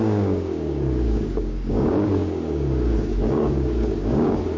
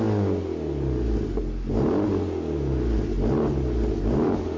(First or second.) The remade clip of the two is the first